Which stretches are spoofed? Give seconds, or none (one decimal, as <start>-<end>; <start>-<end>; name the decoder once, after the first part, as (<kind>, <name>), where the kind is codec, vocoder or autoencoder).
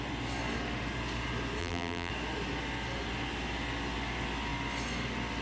1.6-2.1 (vocoder, BigVGAN v2)